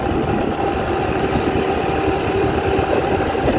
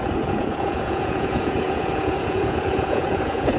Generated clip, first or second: second